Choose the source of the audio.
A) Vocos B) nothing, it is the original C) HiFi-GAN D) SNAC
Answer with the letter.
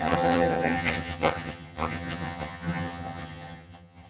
C